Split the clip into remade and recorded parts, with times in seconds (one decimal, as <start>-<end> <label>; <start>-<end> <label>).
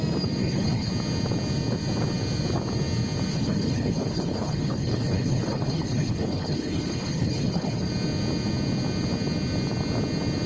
0.0-0.4 recorded; 0.4-0.9 remade; 0.9-3.3 recorded; 3.3-7.9 remade; 7.9-10.5 recorded